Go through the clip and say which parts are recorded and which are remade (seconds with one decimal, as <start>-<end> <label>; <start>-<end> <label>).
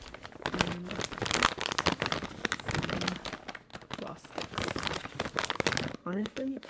0.0-6.0 recorded; 6.0-6.7 remade